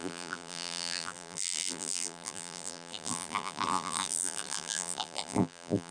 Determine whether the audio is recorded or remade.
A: remade